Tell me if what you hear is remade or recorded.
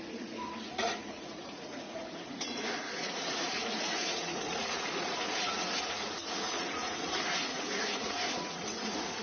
remade